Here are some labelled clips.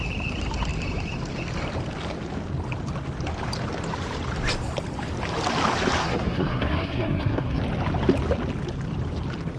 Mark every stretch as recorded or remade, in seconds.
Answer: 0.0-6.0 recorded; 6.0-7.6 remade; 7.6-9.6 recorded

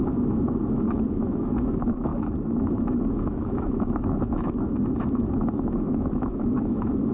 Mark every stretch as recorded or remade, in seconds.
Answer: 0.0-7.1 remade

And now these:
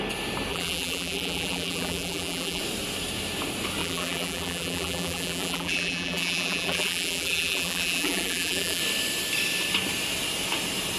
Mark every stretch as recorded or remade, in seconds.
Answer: 0.0-0.5 recorded; 0.5-2.6 remade; 2.6-3.8 recorded; 3.8-8.8 remade; 8.8-11.0 recorded